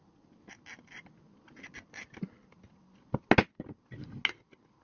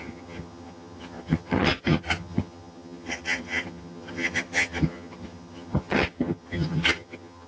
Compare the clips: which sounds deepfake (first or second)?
second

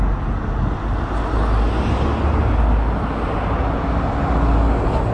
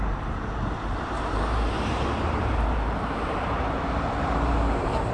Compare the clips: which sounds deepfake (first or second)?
second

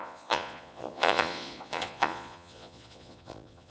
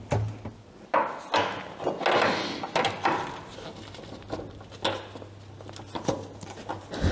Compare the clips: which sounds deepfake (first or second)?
first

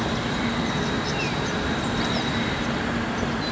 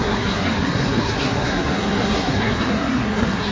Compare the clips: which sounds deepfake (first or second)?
second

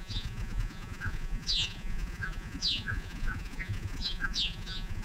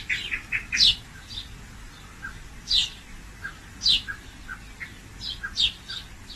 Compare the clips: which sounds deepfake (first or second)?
first